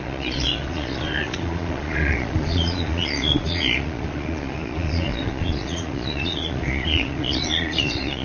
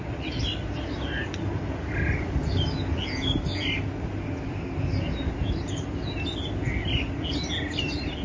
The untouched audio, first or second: second